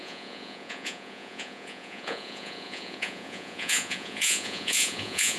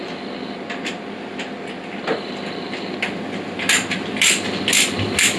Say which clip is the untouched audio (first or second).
second